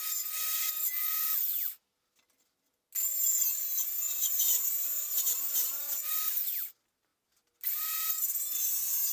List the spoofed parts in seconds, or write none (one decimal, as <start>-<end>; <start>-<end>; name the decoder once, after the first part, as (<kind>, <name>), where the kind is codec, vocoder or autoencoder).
none